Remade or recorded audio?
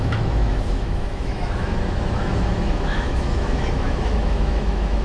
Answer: remade